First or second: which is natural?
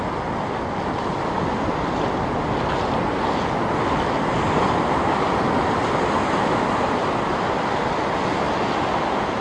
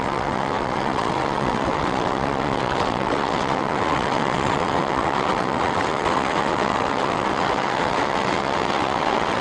first